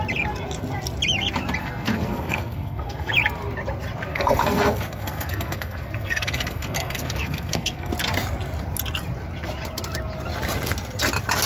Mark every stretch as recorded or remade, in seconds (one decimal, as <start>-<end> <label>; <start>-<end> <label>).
0.0-1.6 recorded; 1.6-3.1 remade; 3.1-4.1 recorded; 4.1-7.9 remade; 7.9-11.5 recorded